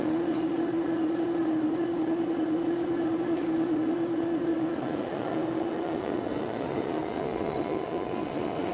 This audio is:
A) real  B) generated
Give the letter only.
B